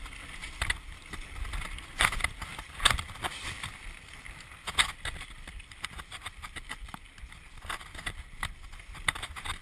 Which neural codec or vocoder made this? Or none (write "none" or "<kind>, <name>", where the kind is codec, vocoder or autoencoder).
none